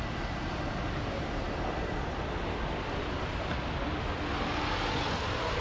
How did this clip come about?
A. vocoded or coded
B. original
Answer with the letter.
B